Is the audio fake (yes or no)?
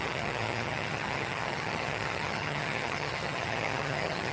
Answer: yes